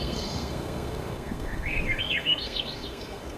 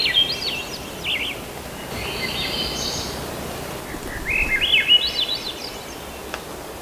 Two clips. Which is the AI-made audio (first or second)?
first